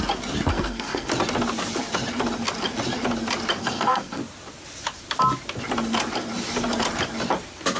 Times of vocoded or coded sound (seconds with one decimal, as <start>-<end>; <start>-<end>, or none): 0.5-1.1; 3.6-4.2